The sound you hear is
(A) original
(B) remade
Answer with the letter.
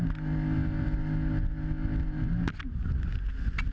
A